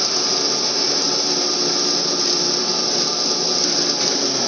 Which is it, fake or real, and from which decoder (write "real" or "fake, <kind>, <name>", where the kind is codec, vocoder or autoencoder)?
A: real